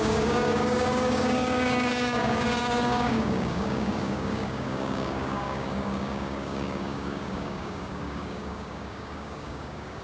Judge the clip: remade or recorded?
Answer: remade